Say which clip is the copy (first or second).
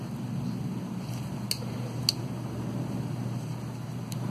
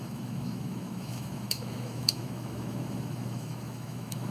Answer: second